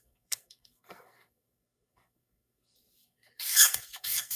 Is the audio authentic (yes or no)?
no